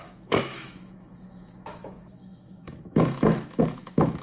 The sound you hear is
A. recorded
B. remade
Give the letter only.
B